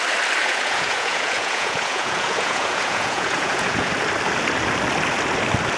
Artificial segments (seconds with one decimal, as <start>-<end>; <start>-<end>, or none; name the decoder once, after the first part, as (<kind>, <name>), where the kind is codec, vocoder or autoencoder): 0.4-3.9 (vocoder, Vocos)